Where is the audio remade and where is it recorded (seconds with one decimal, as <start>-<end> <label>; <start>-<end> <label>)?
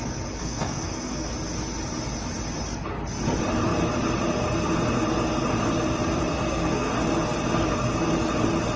0.0-0.4 recorded; 0.4-1.3 remade; 1.3-6.3 recorded; 6.3-6.9 remade; 6.9-8.8 recorded